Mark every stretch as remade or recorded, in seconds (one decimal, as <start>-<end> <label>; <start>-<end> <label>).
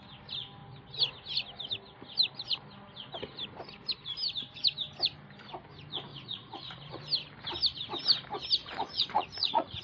0.0-6.1 recorded; 6.1-7.0 remade; 7.0-8.6 recorded; 8.6-9.8 remade